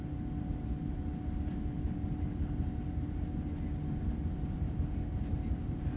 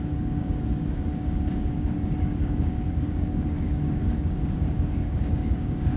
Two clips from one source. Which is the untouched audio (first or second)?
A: first